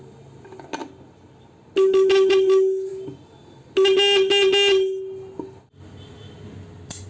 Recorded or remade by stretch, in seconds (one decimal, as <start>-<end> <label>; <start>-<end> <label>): 0.0-7.1 recorded